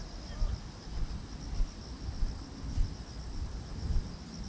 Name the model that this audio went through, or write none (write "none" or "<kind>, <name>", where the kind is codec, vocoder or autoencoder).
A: none